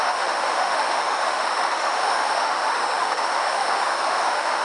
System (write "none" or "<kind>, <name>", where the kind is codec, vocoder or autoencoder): autoencoder, DAC-VAE